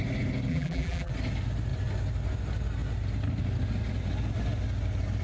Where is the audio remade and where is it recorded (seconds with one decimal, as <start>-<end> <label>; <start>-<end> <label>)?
0.0-0.5 recorded; 0.5-1.1 remade; 1.1-5.2 recorded